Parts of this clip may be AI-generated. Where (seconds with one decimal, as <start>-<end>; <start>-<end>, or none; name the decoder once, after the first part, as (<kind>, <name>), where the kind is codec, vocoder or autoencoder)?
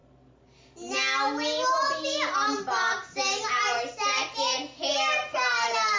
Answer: none